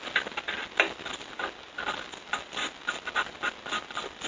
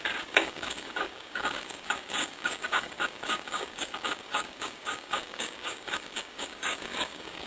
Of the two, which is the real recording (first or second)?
first